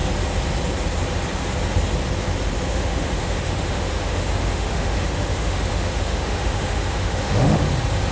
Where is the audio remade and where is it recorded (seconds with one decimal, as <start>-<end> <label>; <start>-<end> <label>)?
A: 0.0-2.7 recorded; 2.7-7.6 remade; 7.6-8.1 recorded

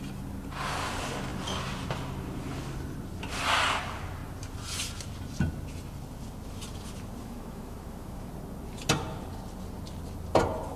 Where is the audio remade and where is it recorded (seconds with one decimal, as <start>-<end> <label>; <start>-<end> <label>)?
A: 0.0-7.2 recorded; 7.2-8.3 remade; 8.3-10.8 recorded

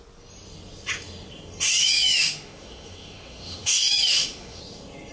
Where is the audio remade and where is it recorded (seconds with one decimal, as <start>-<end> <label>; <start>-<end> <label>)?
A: 0.0-1.8 recorded; 1.8-4.6 remade; 4.6-5.1 recorded

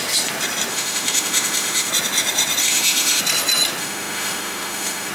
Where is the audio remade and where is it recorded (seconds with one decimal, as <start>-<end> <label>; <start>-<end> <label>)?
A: 0.0-0.7 recorded; 0.7-1.9 remade; 1.9-2.6 recorded; 2.6-3.2 remade; 3.2-3.8 recorded; 3.8-5.1 remade

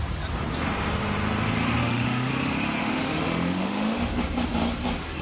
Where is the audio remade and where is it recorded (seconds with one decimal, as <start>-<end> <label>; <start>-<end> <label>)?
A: 0.0-1.8 recorded; 1.8-2.3 remade; 2.3-2.8 recorded; 2.8-4.2 remade; 4.2-5.2 recorded